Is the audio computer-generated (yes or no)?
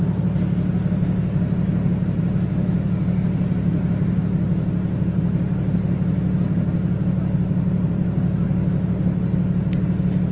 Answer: no